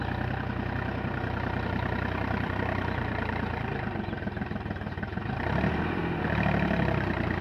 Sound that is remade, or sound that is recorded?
remade